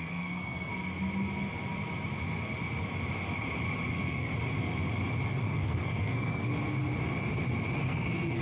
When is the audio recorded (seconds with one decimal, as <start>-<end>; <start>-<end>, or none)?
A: 0.7-3.9; 4.3-5.4; 6.5-7.8